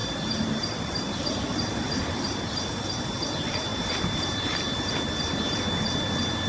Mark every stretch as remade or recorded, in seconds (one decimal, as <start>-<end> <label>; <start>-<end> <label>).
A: 0.0-1.0 remade; 1.0-6.5 recorded